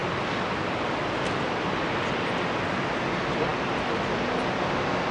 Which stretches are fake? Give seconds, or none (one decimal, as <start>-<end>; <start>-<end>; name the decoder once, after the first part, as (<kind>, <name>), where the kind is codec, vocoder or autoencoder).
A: none